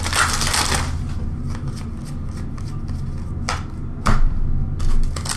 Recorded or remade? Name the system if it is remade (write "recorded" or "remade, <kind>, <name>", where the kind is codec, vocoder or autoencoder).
recorded